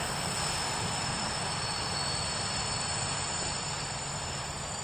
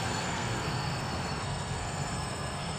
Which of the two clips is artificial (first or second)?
second